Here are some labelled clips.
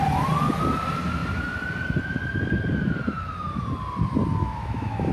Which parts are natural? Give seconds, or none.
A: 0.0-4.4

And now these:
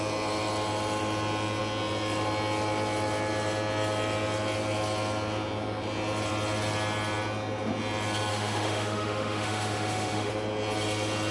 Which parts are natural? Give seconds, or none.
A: 0.0-8.3; 10.3-11.3